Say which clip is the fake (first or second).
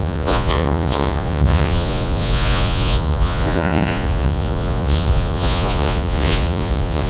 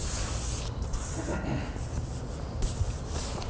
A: first